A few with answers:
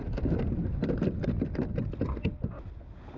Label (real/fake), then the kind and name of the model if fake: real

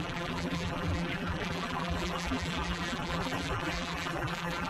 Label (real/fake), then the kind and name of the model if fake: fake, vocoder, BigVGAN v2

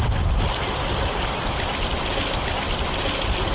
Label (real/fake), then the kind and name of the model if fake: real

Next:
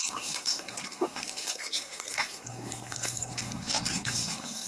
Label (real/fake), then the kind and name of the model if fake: fake, codec, SNAC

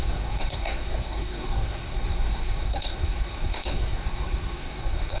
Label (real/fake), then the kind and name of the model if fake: fake, codec, SNAC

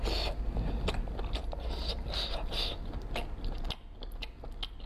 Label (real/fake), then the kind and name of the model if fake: real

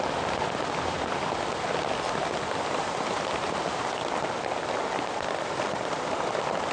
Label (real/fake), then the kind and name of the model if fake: real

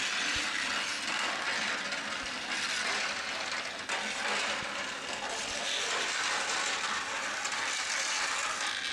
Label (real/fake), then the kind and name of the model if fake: real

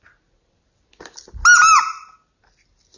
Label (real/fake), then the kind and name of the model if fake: real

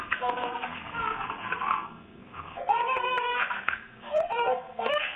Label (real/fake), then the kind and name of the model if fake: fake, codec, SNAC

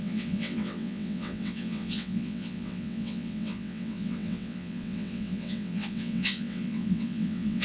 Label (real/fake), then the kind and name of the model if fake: fake, vocoder, WaveNeXt